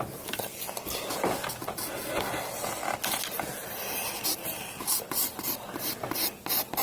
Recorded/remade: recorded